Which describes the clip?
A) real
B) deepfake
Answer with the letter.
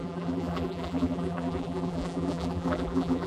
B